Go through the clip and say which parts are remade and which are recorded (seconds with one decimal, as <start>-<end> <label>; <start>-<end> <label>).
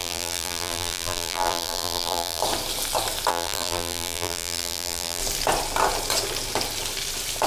0.0-2.4 remade; 2.4-3.3 recorded; 3.3-5.2 remade; 5.2-7.5 recorded